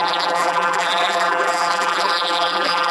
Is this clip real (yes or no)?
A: no